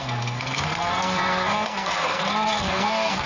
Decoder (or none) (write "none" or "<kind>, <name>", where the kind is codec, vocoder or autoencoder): codec, SNAC